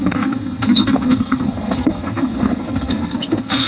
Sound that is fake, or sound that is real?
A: fake